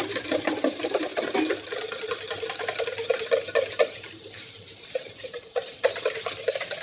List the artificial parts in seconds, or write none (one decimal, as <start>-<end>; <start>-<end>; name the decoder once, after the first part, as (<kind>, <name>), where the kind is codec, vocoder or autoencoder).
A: 0.0-1.1 (vocoder, BigVGAN v2); 4.5-5.6